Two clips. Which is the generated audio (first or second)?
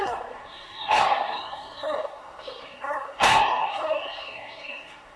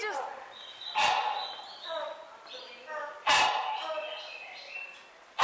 first